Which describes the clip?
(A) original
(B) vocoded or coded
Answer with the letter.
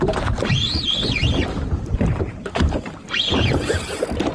B